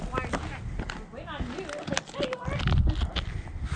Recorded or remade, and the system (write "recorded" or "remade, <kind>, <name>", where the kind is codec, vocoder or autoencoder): recorded